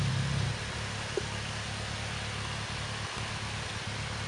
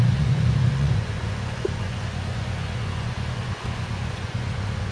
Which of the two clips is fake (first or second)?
second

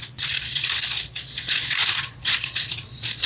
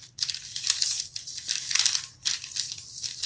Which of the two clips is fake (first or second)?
first